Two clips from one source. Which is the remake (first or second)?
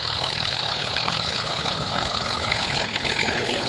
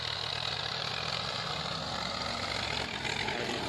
first